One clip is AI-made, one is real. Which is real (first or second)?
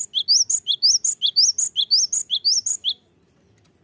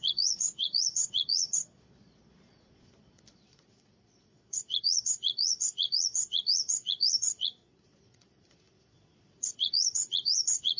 first